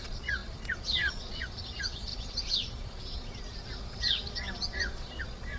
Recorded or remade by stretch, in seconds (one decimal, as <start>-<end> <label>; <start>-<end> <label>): 0.0-5.6 remade